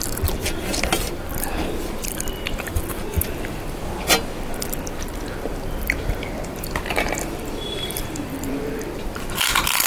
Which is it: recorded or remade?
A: remade